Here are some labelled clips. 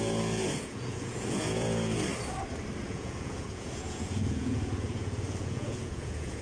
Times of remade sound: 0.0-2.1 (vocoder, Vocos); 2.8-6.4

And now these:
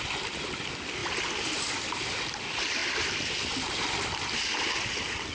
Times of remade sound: none